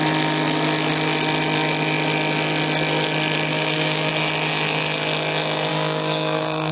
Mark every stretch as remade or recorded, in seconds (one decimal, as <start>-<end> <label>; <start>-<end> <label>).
0.0-3.5 recorded; 3.5-4.1 remade; 4.1-5.7 recorded; 5.7-6.7 remade